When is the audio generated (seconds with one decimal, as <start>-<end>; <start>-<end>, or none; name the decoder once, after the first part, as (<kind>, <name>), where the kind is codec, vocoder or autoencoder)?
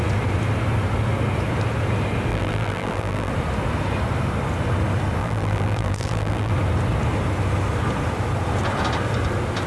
2.3-3.3 (vocoder, BigVGAN v2); 5.2-6.5